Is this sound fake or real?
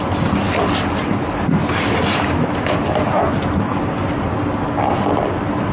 real